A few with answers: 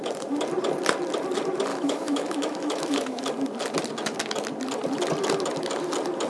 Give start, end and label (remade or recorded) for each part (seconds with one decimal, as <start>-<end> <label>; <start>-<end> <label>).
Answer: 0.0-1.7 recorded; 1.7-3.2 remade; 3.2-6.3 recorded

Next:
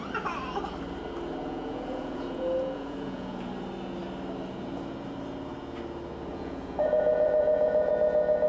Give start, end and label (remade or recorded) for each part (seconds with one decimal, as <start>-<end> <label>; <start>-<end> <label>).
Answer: 0.0-1.4 recorded; 1.4-3.5 remade; 3.5-6.3 recorded; 6.3-7.9 remade; 7.9-8.5 recorded

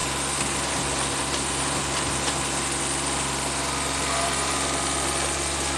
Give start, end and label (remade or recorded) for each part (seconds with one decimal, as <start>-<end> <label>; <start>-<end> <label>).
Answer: 0.0-5.8 recorded

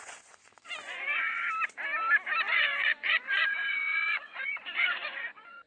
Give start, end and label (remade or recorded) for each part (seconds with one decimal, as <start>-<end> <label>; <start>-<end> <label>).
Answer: 0.0-1.4 remade; 1.4-2.5 recorded; 2.5-5.7 remade